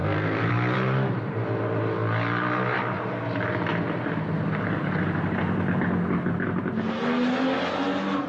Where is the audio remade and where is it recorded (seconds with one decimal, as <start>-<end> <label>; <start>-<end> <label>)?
0.0-0.5 remade; 0.5-8.3 recorded